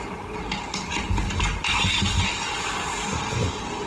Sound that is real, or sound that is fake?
real